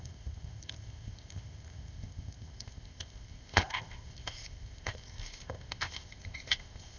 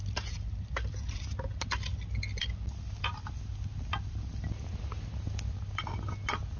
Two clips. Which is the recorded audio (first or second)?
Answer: second